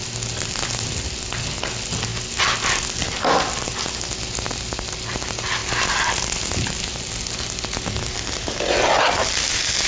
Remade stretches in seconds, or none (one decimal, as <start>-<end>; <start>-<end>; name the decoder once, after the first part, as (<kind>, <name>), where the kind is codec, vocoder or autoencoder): none